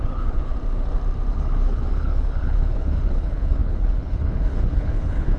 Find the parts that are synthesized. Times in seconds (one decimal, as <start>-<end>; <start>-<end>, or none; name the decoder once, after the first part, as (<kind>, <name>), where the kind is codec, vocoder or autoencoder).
0.0-0.5 (codec, HILCodec); 1.3-5.4